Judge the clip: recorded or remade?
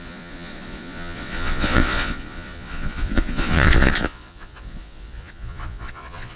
remade